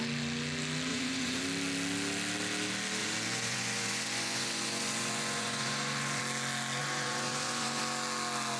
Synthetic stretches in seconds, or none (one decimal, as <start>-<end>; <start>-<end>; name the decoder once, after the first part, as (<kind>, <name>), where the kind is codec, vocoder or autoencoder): 0.9-1.4 (vocoder, Vocos); 3.0-6.2; 6.8-7.8